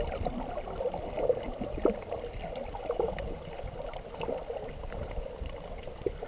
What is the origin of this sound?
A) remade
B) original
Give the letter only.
B